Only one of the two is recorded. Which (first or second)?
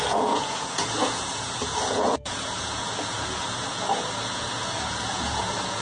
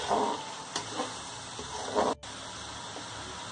second